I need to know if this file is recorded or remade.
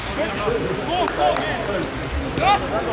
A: recorded